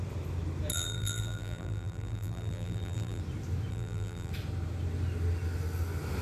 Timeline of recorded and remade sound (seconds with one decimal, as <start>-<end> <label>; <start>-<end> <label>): 0.0-0.7 recorded; 0.7-3.2 remade; 3.2-3.7 recorded; 3.7-4.3 remade; 4.3-6.2 recorded